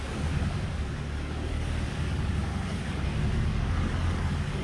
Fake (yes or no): yes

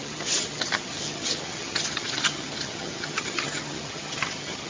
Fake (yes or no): yes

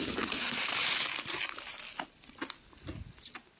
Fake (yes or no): no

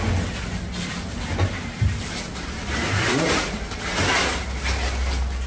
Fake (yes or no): no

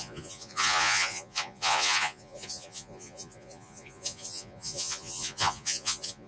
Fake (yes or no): yes